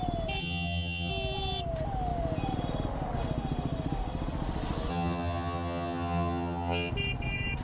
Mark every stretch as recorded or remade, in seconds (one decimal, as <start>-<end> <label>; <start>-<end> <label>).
0.0-0.4 recorded; 0.4-1.1 remade; 1.1-4.9 recorded; 4.9-6.9 remade; 6.9-7.6 recorded